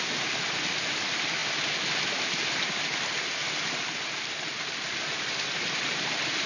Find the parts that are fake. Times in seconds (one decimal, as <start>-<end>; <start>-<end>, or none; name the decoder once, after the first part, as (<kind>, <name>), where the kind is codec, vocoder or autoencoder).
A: none